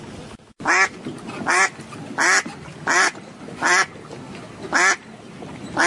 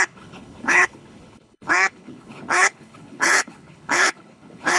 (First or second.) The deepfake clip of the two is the second